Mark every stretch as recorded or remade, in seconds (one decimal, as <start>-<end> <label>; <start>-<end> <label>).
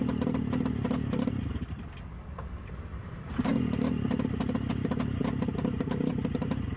0.0-6.8 recorded